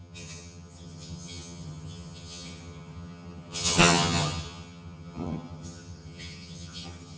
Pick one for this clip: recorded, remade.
remade